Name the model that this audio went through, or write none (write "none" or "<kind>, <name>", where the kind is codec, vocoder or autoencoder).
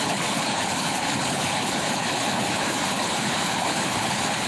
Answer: codec, HILCodec